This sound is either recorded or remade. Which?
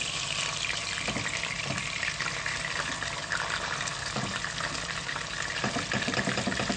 recorded